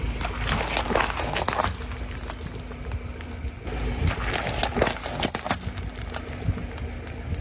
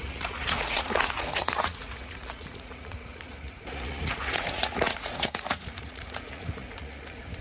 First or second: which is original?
first